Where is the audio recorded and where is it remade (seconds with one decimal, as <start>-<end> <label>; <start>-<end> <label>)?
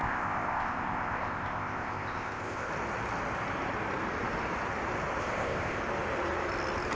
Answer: 0.0-2.7 remade; 2.7-5.2 recorded; 5.2-5.8 remade; 5.8-6.9 recorded